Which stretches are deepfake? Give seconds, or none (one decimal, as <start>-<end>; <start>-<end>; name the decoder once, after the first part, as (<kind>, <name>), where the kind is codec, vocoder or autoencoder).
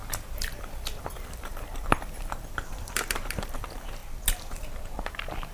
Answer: 0.0-4.0 (vocoder, BigVGAN v2); 5.1-5.5